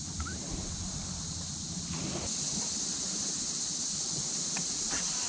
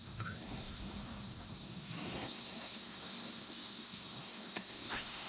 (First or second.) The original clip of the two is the first